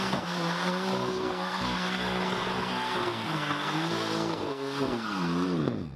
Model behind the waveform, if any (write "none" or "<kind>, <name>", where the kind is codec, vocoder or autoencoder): codec, SNAC